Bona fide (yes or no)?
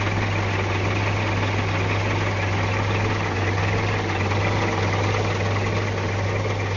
yes